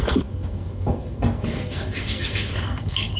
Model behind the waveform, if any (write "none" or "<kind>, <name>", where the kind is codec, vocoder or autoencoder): codec, SNAC